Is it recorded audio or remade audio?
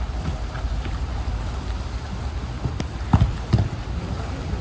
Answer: recorded